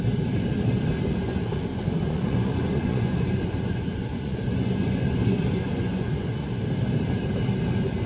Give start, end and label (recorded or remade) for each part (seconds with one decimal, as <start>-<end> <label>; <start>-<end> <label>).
0.0-1.7 recorded; 1.7-6.6 remade; 6.6-8.1 recorded